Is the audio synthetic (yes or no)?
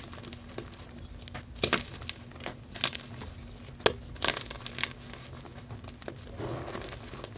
no